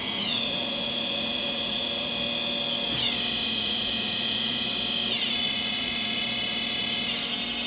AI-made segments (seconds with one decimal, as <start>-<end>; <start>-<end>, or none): 0.0-2.1; 3.4-4.7; 5.2-6.2